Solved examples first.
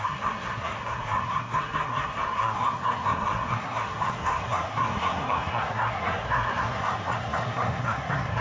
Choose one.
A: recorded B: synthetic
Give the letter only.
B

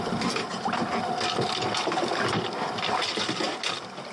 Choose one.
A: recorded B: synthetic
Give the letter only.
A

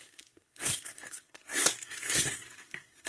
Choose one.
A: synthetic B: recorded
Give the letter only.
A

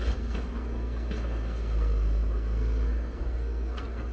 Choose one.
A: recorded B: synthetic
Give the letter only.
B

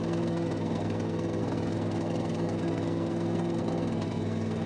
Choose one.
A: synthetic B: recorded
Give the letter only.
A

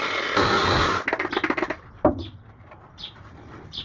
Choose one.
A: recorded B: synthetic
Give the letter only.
A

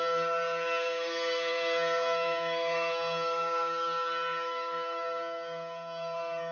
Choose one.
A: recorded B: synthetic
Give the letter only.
B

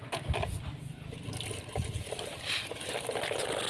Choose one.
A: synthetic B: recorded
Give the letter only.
B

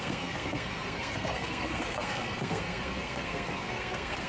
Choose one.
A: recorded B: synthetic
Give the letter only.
B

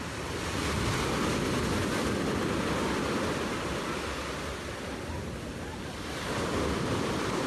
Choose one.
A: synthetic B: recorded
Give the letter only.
B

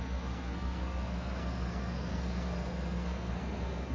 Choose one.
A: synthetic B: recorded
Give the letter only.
A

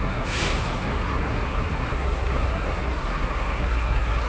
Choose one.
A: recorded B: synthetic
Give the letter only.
B